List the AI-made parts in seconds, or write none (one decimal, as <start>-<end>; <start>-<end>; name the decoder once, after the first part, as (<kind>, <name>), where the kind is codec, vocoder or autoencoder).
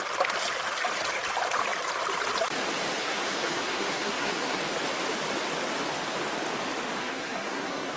3.0-4.6 (codec, SNAC); 7.0-8.0